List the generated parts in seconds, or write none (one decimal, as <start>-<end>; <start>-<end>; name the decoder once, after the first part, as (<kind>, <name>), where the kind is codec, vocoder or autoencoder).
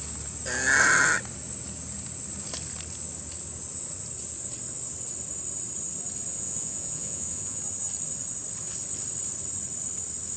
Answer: 6.3-7.6 (vocoder, Vocos)